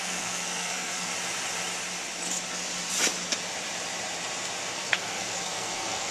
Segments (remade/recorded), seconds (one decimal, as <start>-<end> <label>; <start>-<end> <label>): 0.0-1.1 remade; 1.1-4.7 recorded; 4.7-6.1 remade